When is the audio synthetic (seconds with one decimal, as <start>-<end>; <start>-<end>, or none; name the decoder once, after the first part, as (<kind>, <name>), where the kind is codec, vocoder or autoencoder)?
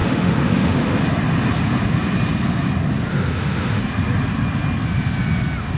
0.0-1.0 (autoencoder, DAC-VAE); 3.1-3.8